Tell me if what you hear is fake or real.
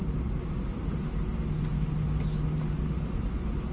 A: real